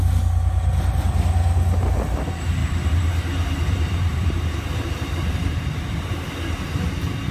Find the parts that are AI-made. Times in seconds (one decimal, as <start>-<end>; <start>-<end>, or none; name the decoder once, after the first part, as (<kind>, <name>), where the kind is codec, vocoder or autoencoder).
2.6-7.3 (vocoder, BigVGAN v2)

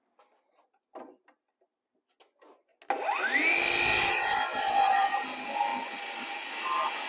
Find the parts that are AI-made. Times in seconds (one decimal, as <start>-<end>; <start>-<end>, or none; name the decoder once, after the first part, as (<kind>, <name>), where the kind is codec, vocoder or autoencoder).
4.5-5.2 (vocoder, BigVGAN v2)